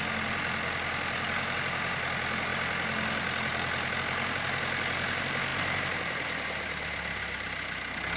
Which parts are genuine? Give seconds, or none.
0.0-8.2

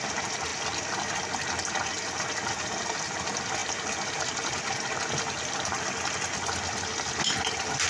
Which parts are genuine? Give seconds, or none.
0.0-7.9